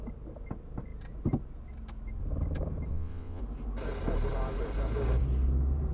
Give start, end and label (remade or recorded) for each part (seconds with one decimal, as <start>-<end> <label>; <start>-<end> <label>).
0.0-2.9 recorded; 2.9-3.4 remade; 3.4-5.9 recorded

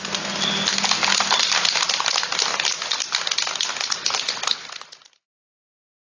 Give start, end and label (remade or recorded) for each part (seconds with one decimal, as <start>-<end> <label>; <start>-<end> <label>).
0.0-6.1 recorded

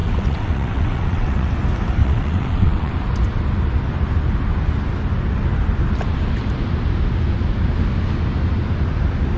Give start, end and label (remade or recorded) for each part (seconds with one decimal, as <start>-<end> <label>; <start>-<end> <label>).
0.0-1.5 remade; 1.5-2.0 recorded; 2.0-2.9 remade; 2.9-9.4 recorded

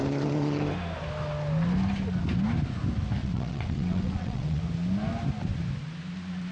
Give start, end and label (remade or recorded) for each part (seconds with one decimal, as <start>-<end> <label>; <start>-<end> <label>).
0.0-3.2 recorded; 3.2-4.6 remade; 4.6-6.5 recorded